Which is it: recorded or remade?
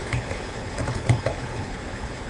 remade